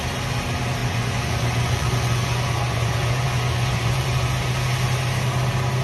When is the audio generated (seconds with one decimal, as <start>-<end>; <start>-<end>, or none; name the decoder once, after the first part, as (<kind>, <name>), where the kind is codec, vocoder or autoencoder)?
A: 0.8-4.3 (vocoder, Vocos)